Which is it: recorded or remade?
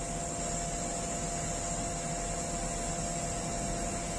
recorded